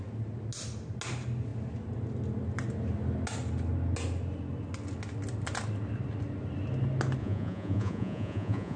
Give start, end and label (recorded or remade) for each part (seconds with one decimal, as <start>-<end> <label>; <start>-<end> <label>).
0.0-7.2 recorded; 7.2-8.8 remade